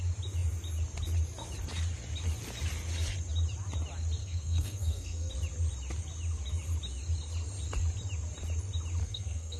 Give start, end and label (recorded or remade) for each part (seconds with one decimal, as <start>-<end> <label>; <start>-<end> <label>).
0.0-4.2 recorded; 4.2-5.3 remade; 5.3-9.0 recorded; 9.0-9.6 remade